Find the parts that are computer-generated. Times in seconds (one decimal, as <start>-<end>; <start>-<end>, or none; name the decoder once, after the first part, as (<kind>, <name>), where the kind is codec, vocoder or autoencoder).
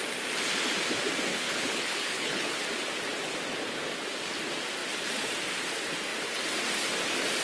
1.3-2.6 (codec, HILCodec)